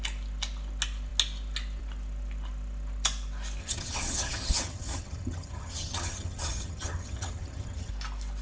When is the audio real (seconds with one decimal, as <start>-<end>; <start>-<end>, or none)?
0.0-3.6; 7.9-8.4